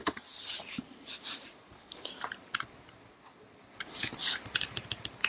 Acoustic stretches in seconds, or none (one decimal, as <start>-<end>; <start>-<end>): 2.9-4.2